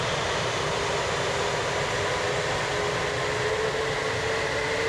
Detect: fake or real real